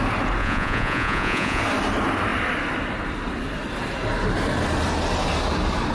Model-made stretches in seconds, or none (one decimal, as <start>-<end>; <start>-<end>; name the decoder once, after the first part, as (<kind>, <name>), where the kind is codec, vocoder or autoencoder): 0.4-1.6 (vocoder, Vocos)